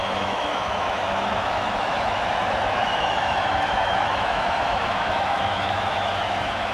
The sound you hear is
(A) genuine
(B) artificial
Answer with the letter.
B